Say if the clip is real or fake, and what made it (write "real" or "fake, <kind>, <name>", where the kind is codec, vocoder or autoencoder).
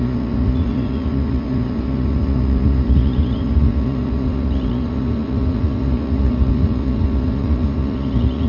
fake, vocoder, Vocos